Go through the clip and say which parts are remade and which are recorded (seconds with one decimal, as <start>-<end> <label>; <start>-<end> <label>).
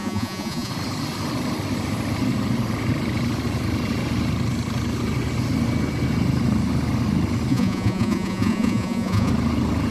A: 0.0-0.7 remade; 0.7-7.5 recorded; 7.5-9.3 remade; 9.3-9.9 recorded